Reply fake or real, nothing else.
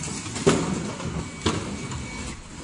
real